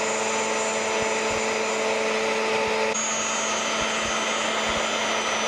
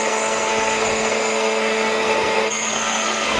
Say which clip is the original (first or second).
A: first